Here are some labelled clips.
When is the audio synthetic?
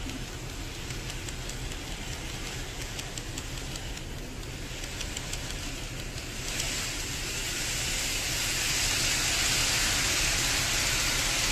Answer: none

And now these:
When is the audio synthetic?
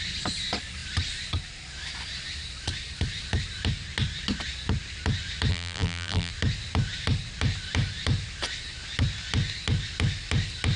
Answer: 5.5-6.3 (vocoder, BigVGAN v2)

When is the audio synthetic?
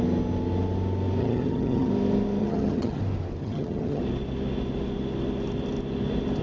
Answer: 1.2-1.9 (vocoder, HiFi-GAN); 2.4-3.0; 3.4-4.0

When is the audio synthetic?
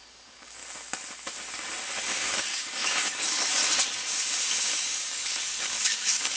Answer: 0.0-0.6 (codec, DAC); 2.0-3.6; 4.7-6.4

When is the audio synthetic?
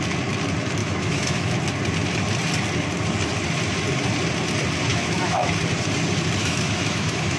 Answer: 0.8-1.6 (autoencoder, DAC-VAE); 4.9-5.5; 6.4-7.4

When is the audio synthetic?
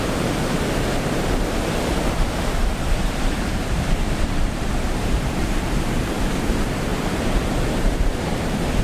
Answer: 2.6-6.5 (vocoder, BigVGAN v2); 6.9-8.8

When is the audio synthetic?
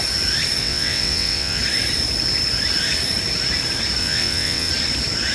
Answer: 0.6-1.6 (vocoder, WaveNeXt); 4.0-4.7